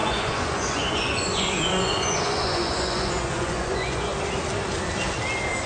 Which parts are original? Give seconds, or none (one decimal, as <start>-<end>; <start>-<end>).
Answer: 4.1-5.7